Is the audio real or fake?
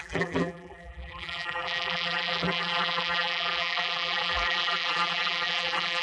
fake